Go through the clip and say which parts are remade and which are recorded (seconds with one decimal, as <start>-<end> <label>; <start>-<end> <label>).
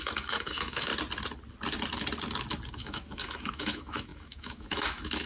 0.0-0.9 remade; 0.9-2.7 recorded; 2.7-5.3 remade